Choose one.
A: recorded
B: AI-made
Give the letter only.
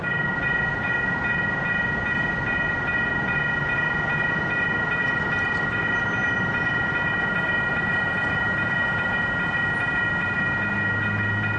A